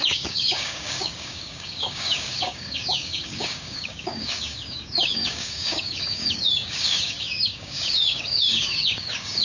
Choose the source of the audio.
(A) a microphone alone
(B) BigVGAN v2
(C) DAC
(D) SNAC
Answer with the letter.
C